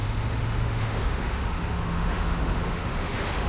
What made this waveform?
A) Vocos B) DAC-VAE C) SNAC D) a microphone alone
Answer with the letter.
B